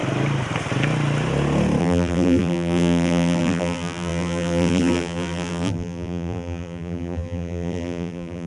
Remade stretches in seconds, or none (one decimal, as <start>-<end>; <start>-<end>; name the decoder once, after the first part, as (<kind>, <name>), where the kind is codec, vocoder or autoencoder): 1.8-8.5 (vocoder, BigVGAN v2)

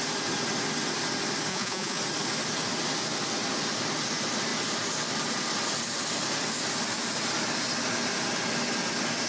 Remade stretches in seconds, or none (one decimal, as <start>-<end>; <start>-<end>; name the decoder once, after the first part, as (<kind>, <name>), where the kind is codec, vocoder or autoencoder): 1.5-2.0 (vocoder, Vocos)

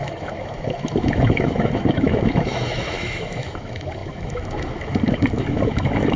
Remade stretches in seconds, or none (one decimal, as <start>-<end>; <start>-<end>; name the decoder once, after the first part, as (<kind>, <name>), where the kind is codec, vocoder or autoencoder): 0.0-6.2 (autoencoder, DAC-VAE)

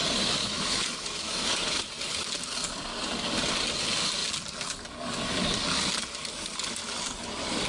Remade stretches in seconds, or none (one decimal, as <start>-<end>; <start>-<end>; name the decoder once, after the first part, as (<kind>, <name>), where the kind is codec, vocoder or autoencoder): 0.4-1.5 (autoencoder, DAC-VAE)

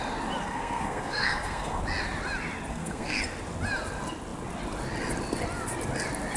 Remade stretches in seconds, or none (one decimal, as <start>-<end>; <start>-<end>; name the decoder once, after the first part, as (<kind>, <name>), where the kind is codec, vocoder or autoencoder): 0.4-1.8 (codec, SNAC); 2.7-3.2

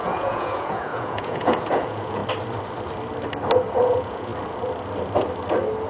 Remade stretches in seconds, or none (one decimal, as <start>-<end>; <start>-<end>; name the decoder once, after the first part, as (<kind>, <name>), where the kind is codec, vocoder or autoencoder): 0.0-2.2 (vocoder, Vocos); 3.7-4.3